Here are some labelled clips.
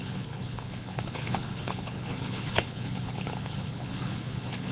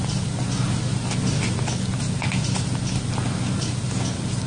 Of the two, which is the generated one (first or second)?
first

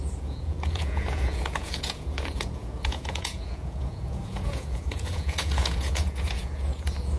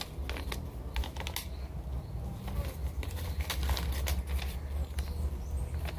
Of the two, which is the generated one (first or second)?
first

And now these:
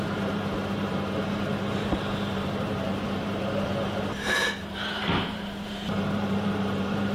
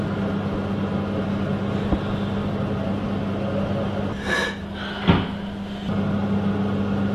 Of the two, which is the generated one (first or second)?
first